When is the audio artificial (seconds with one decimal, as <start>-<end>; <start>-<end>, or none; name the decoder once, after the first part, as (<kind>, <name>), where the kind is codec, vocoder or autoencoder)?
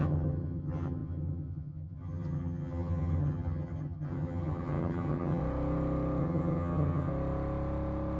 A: 0.0-5.4 (vocoder, HiFi-GAN); 6.2-7.1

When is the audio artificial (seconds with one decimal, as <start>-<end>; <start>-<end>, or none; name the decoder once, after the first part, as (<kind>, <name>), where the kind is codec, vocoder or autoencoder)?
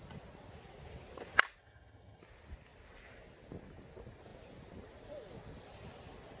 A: 1.6-2.2 (vocoder, HiFi-GAN)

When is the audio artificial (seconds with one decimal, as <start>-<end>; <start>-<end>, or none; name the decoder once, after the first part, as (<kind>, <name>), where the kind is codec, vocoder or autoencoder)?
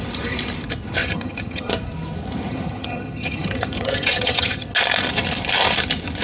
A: 1.0-1.7 (vocoder, HiFi-GAN); 2.5-4.7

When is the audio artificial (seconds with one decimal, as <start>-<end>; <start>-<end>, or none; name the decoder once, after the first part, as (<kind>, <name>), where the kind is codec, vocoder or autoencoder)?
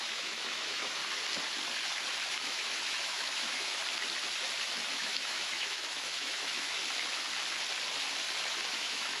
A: 0.0-1.0 (autoencoder, DAC-VAE); 2.3-3.8; 4.9-6.8; 8.7-9.2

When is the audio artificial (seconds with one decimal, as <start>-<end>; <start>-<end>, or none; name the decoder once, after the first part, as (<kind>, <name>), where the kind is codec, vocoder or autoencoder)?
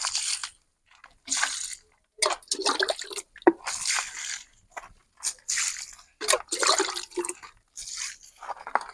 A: none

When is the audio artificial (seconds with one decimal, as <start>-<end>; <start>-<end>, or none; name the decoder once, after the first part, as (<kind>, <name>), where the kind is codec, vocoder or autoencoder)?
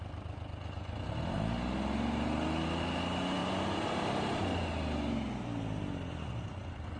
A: none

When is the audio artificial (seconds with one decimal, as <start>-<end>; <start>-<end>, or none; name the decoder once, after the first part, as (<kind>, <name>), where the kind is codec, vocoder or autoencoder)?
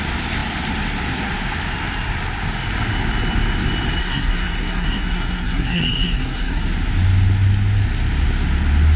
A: 4.0-6.6 (codec, SNAC)